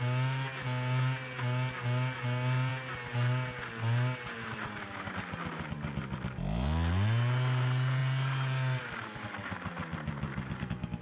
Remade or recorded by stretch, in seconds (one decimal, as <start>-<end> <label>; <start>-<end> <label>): 0.0-11.0 recorded